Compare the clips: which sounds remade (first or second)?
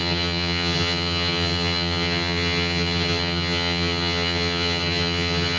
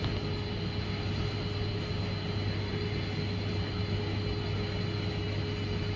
first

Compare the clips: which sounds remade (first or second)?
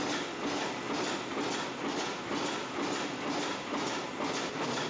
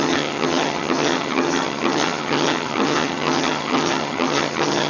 second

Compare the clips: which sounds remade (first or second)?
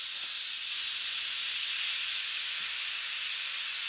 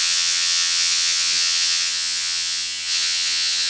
second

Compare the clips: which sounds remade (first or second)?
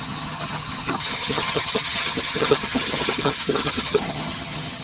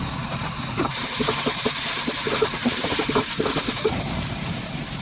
first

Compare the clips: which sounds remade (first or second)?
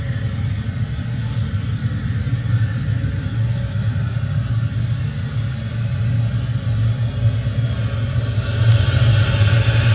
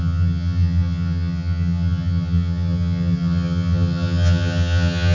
second